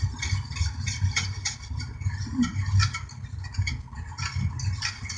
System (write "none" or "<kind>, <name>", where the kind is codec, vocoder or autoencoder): none